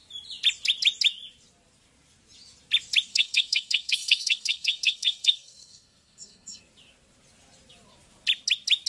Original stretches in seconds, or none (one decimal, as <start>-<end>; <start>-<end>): 0.0-3.1; 6.6-8.9